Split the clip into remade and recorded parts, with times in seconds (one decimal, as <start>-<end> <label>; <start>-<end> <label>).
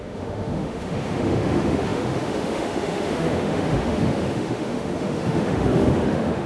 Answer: 0.0-6.5 remade